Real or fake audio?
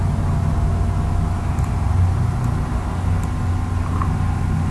real